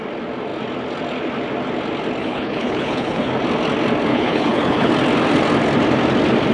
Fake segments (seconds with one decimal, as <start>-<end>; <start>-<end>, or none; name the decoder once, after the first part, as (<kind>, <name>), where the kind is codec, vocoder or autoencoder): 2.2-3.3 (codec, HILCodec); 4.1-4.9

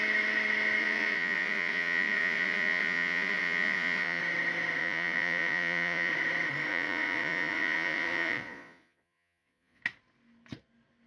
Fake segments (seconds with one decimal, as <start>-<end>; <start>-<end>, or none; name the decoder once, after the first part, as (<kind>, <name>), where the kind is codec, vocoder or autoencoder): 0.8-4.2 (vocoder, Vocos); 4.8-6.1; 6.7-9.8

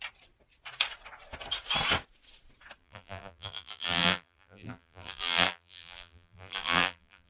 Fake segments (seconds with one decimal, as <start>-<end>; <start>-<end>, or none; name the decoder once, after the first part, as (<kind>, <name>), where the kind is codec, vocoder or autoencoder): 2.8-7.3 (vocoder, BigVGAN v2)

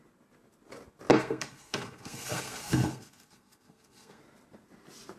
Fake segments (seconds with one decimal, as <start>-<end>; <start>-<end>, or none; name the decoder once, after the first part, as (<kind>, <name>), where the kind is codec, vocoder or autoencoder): 1.1-4.2 (codec, SNAC)

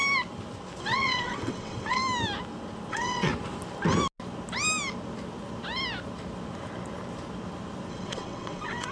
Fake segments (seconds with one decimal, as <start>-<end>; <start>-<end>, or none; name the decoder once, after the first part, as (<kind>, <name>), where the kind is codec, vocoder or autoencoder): 0.8-2.0 (vocoder, WaveNeXt); 2.9-3.3; 7.9-8.9